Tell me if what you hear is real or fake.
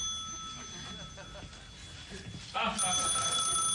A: real